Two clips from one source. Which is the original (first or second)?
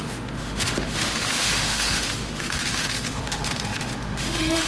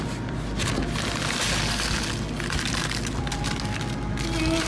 second